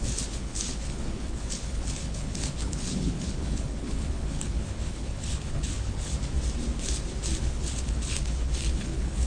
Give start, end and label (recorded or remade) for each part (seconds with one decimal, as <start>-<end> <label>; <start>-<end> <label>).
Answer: 0.0-6.1 remade; 6.1-7.4 recorded; 7.4-9.3 remade